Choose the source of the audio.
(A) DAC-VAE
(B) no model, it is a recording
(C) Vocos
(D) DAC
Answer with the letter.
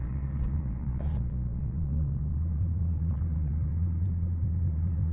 C